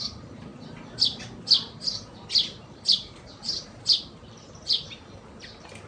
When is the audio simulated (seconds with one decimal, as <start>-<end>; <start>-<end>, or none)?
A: none